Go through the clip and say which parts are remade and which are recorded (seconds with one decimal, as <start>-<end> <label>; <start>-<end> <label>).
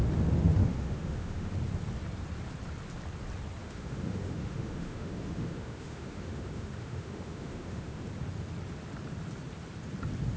0.0-0.6 recorded; 0.6-1.5 remade; 1.5-3.6 recorded; 3.6-8.0 remade; 8.0-10.4 recorded